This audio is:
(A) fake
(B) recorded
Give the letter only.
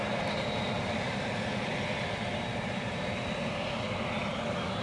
B